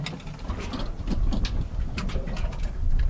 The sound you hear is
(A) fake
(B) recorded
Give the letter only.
B